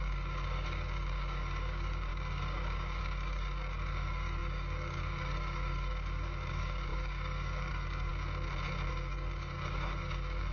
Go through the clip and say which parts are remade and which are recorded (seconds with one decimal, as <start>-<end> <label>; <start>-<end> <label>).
0.0-8.1 remade; 8.1-8.9 recorded; 8.9-10.5 remade